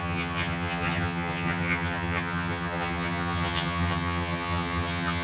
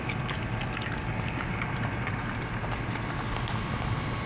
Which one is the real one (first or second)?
second